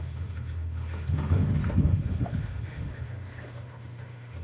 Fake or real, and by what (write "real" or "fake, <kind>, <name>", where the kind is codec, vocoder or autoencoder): fake, autoencoder, DAC-VAE